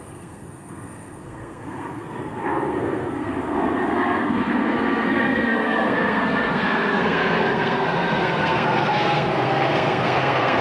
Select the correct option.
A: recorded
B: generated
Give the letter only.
B